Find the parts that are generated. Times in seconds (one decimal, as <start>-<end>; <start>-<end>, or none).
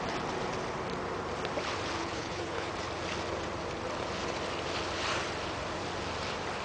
2.0-2.7